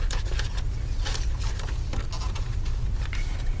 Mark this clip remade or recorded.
recorded